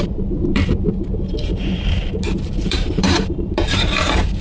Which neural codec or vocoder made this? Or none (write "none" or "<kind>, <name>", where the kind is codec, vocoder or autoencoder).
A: vocoder, BigVGAN v2